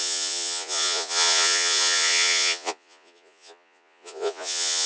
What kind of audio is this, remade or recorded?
remade